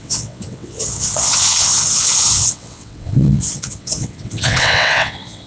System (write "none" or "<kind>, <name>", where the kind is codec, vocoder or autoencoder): vocoder, WaveNeXt